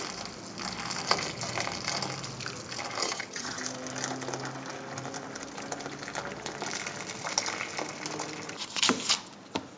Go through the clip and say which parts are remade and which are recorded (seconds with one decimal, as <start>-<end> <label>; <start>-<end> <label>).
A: 0.0-3.0 recorded; 3.0-3.6 remade; 3.6-9.8 recorded